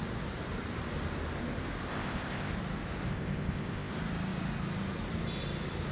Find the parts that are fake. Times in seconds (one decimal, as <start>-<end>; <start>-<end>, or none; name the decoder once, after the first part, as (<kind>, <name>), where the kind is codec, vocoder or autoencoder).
1.9-2.5 (codec, ZipCodec); 3.1-3.9